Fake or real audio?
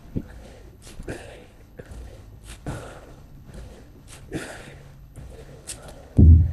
fake